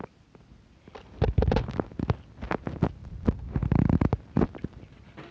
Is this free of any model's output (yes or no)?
yes